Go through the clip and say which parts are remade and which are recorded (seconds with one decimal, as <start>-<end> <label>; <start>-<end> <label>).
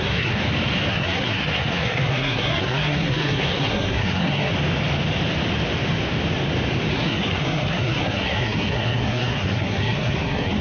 0.0-0.4 remade; 0.4-0.9 recorded; 0.9-4.5 remade; 4.5-6.9 recorded; 6.9-10.6 remade